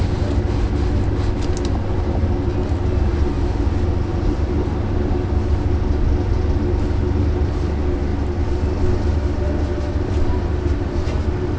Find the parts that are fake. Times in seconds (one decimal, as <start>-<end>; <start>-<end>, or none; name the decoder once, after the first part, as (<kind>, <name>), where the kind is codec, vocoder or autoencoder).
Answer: 4.1-5.1 (vocoder, BigVGAN v2)